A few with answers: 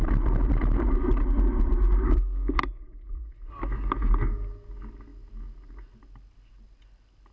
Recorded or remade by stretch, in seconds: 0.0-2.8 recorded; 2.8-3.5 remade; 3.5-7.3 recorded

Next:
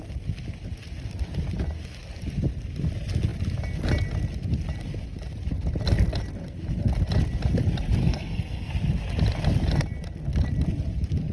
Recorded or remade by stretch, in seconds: 0.0-8.0 recorded; 8.0-8.7 remade; 8.7-11.3 recorded

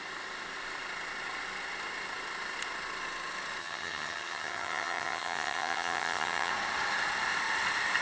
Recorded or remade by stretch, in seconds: 0.0-3.6 recorded; 3.6-6.5 remade; 6.5-8.0 recorded

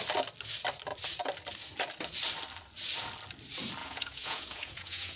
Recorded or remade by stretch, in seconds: 0.0-3.8 recorded; 3.8-5.2 remade

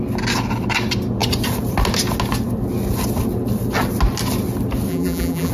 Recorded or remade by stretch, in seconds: 0.0-4.9 recorded; 4.9-5.5 remade